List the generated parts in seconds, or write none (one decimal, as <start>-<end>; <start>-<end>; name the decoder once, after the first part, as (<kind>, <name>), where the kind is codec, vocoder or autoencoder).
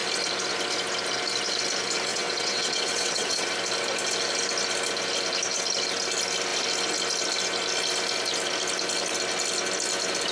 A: 2.1-3.5 (vocoder, WaveNeXt)